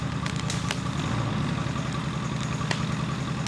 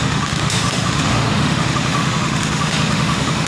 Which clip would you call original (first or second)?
first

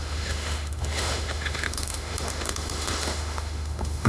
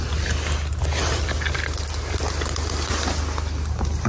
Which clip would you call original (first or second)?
second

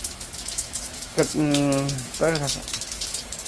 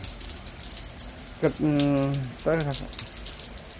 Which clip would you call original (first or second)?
second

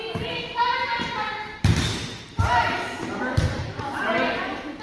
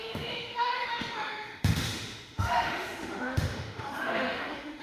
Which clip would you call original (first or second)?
first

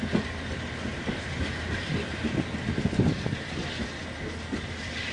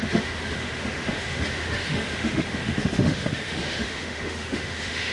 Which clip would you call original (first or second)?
first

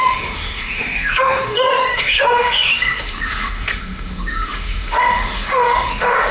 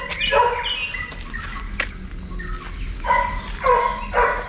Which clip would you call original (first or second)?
second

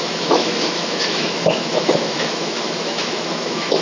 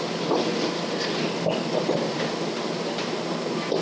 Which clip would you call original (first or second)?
second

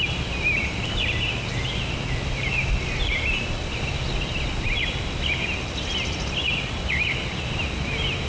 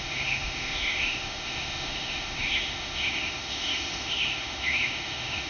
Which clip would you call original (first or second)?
first